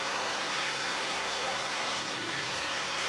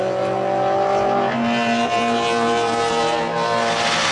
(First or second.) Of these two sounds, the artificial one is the first